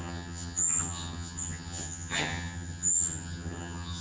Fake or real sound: fake